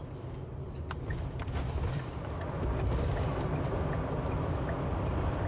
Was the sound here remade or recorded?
recorded